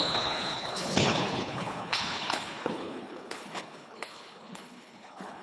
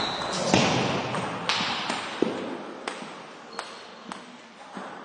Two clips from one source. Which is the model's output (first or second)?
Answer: first